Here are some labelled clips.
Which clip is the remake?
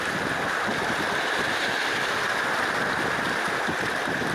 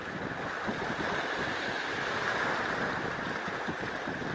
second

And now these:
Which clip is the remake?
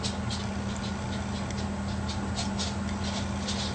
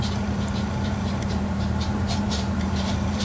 second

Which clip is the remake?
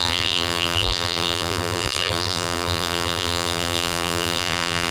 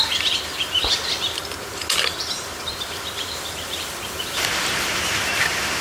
first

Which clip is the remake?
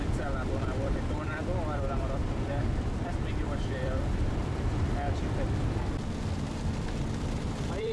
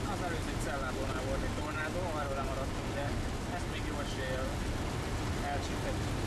first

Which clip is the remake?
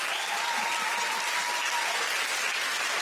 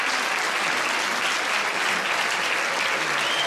first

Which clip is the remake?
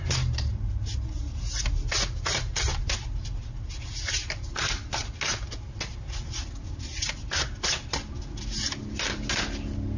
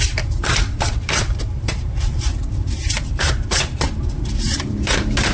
second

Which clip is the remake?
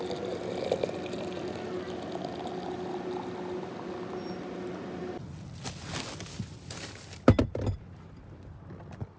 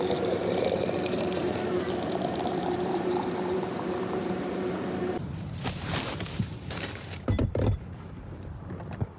second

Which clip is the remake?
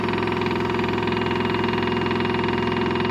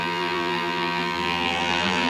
second